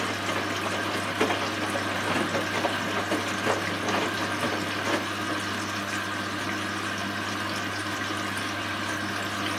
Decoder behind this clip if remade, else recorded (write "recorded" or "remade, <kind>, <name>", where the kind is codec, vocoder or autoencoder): recorded